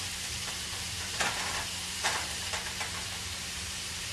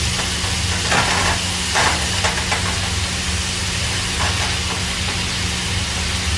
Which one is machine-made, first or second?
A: first